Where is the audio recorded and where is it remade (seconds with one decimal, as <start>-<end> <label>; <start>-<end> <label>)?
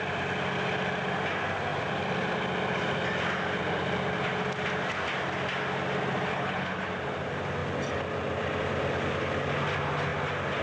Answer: 0.0-6.3 recorded; 6.3-6.8 remade; 6.8-10.6 recorded